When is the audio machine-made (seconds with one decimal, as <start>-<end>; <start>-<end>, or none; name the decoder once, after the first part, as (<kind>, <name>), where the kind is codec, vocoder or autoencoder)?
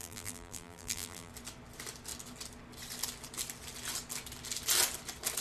0.0-1.3 (vocoder, BigVGAN v2)